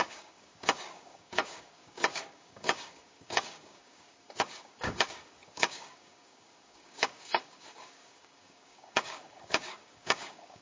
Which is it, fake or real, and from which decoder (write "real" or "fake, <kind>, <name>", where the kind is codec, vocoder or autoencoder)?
fake, codec, DAC